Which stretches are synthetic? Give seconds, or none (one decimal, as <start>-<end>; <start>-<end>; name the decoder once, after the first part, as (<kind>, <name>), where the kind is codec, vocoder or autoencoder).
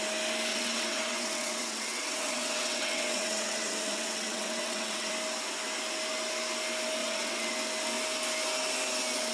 0.5-5.1 (vocoder, WaveNeXt); 7.0-7.5